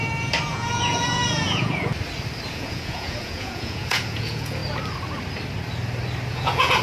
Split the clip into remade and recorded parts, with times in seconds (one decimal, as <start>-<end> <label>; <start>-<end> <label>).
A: 0.0-0.5 recorded; 0.5-1.9 remade; 1.9-2.5 recorded; 2.5-4.6 remade; 4.6-6.3 recorded; 6.3-6.8 remade